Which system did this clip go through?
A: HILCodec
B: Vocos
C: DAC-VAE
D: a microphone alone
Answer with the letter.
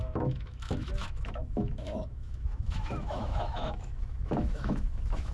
C